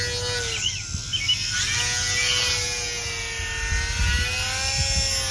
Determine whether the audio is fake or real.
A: real